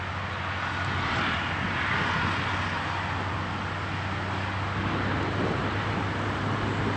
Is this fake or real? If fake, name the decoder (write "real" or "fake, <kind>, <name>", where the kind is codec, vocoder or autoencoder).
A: real